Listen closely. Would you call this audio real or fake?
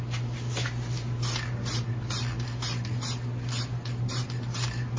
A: fake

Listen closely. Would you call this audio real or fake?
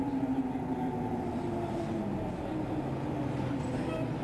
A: real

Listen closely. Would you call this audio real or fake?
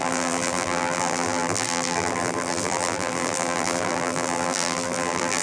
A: fake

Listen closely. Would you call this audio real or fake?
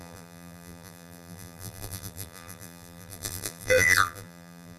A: fake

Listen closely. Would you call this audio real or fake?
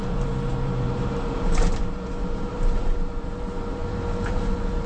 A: fake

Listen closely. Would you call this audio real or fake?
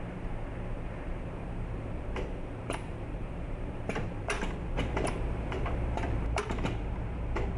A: fake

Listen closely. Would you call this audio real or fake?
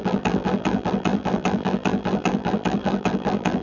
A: fake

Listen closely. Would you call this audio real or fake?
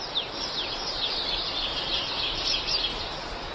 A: real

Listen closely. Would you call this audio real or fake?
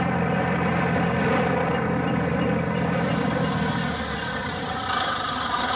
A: real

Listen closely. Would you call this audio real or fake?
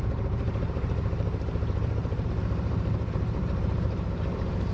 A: fake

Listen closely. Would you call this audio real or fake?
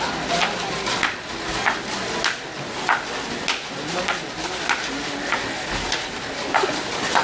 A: real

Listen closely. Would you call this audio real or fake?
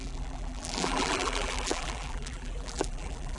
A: fake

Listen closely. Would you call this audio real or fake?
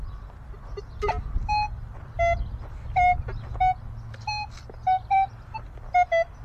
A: real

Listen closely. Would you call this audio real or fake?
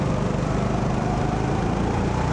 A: real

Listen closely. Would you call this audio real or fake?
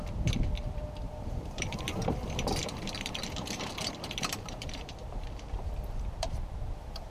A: fake